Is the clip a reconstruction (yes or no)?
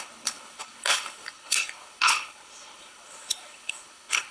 yes